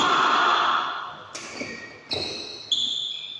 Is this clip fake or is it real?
real